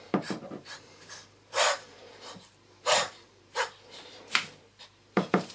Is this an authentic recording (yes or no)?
no